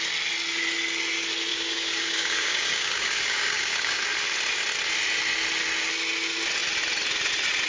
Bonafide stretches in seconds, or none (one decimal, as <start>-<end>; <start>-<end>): 0.0-1.5; 4.0-7.7